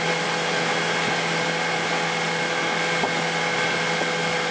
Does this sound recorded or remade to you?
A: recorded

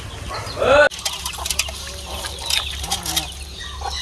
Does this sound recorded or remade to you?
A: recorded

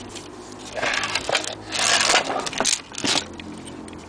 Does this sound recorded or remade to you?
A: recorded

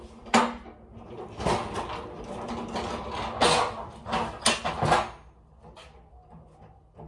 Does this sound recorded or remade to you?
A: recorded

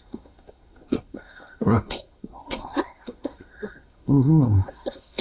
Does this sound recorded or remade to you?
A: remade